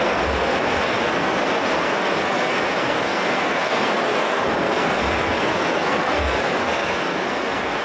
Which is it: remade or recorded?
remade